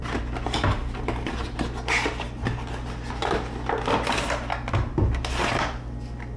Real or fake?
real